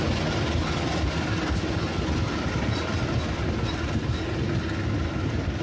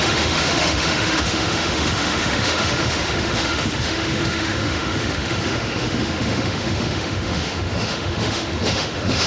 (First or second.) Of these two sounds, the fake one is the second